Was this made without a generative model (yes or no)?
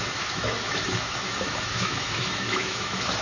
no